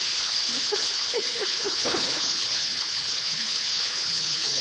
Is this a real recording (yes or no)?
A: no